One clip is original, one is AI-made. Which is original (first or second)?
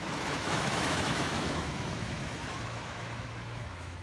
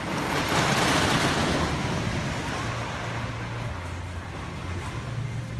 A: second